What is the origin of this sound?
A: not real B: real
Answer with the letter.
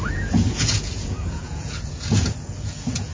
A